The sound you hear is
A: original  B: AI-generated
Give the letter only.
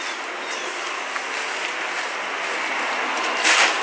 A